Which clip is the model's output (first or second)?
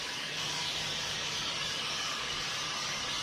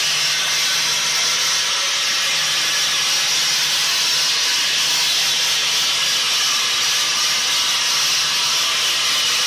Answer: first